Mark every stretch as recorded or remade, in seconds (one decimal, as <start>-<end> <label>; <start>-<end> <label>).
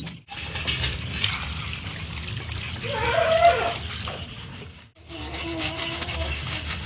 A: 0.0-4.5 recorded; 4.5-6.9 remade